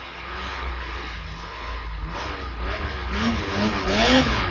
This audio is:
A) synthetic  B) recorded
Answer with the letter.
A